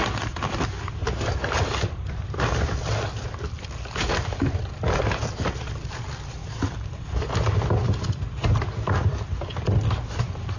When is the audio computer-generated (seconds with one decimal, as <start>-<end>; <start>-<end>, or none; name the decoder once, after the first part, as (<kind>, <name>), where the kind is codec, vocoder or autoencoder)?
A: 0.0-1.0 (vocoder, BigVGAN v2); 1.6-10.6